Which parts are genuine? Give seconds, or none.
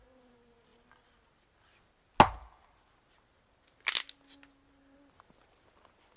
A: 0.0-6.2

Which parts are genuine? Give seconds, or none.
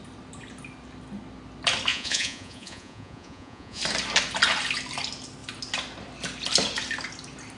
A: 0.0-1.9; 3.8-7.6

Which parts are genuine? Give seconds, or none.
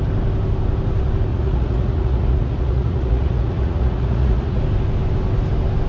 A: 0.0-1.3; 4.6-5.9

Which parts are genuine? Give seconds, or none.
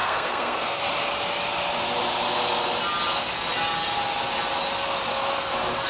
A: 0.8-5.9